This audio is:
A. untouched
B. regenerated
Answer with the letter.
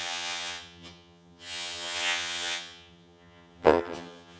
B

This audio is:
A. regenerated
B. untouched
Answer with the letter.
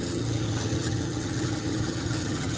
A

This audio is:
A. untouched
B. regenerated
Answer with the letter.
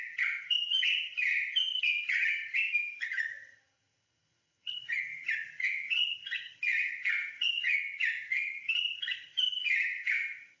B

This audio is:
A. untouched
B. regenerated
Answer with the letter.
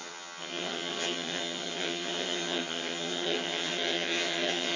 B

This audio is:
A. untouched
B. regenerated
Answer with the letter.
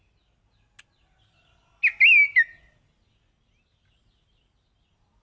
A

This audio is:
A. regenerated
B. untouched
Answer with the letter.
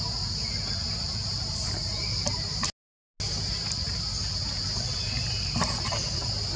B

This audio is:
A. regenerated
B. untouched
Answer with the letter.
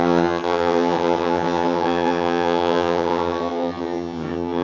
A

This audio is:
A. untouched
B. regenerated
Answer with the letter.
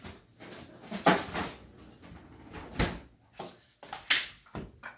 A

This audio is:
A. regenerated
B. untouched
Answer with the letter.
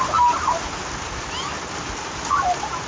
B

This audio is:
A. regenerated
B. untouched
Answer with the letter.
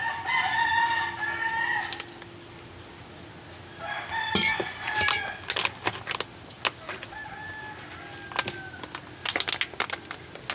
B